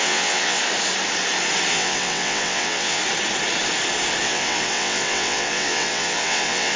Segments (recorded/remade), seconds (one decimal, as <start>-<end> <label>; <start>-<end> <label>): 0.0-0.6 remade; 0.6-1.7 recorded; 1.7-3.0 remade; 3.0-4.2 recorded; 4.2-6.8 remade